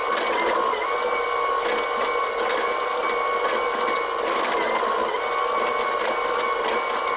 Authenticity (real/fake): real